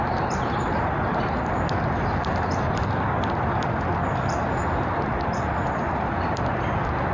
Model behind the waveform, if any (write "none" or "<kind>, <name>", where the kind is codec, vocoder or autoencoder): none